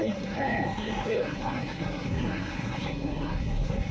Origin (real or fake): fake